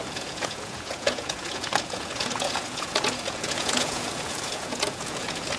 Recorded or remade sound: remade